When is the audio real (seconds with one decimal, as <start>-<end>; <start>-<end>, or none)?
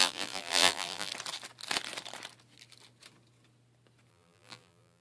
1.1-4.1